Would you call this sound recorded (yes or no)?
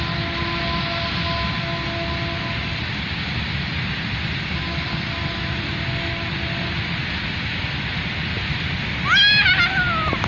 yes